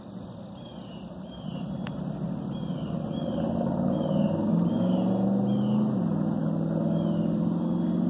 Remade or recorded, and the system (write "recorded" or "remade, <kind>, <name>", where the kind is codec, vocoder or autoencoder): recorded